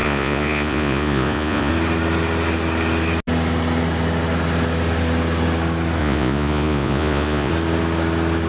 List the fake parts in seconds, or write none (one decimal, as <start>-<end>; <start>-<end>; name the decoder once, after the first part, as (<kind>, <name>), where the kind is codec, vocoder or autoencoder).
0.0-1.7 (vocoder, Vocos); 6.0-7.5